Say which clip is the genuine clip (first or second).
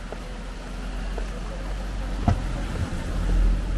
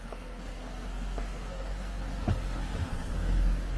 first